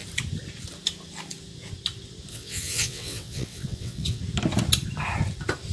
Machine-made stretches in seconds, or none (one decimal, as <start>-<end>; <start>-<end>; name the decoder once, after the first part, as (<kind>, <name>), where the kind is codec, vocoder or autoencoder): 2.3-4.2 (vocoder, WaveNeXt)